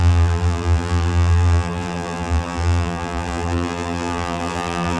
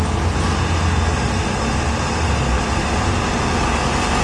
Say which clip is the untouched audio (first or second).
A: second